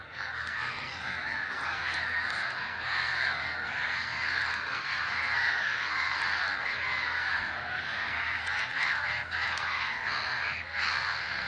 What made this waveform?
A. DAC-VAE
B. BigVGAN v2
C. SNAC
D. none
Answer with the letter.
C